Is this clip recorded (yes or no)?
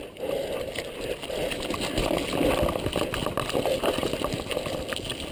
yes